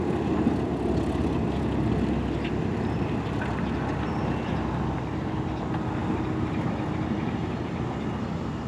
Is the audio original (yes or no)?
yes